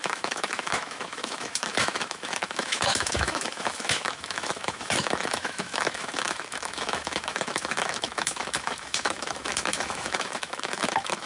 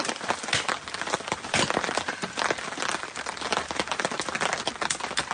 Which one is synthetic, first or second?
first